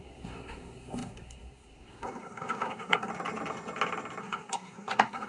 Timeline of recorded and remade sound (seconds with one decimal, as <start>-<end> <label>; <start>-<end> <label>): 0.0-3.1 remade; 3.1-4.2 recorded; 4.2-5.3 remade